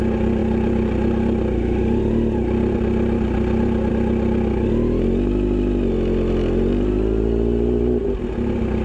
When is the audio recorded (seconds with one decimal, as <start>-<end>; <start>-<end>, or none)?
0.0-8.8